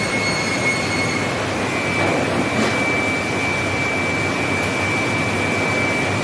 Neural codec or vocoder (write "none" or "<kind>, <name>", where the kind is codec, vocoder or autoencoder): none